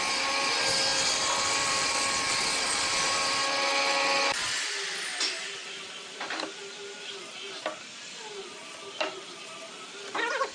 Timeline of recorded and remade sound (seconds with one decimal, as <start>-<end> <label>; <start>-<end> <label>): 0.0-0.9 recorded; 0.9-3.4 remade; 3.4-10.5 recorded